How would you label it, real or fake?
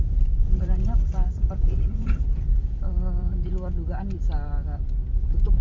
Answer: fake